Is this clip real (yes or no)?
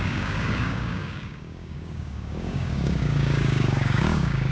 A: no